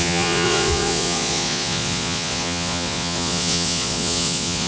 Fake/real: fake